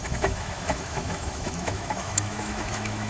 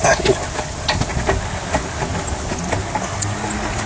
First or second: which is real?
second